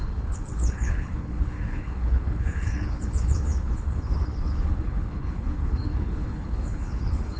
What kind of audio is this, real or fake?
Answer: fake